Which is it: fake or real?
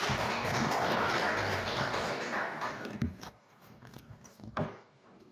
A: fake